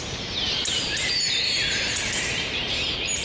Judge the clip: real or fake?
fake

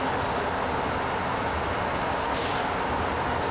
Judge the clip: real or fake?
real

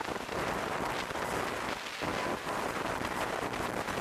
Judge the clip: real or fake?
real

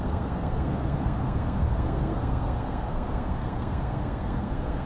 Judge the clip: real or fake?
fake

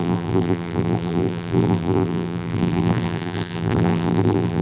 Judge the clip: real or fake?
fake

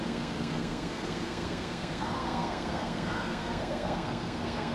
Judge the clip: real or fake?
fake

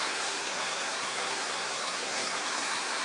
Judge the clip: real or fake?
fake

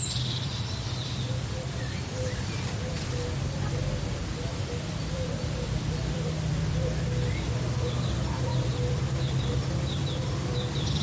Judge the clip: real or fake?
fake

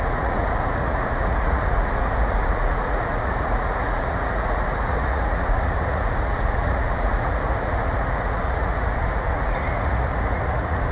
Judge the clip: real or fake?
fake